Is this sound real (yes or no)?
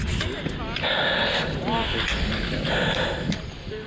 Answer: yes